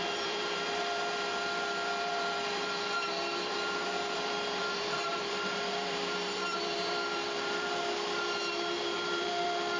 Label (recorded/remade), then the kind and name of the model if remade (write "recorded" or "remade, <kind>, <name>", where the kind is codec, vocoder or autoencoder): remade, vocoder, BigVGAN v2